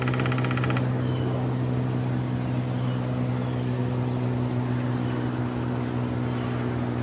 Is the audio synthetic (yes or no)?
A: no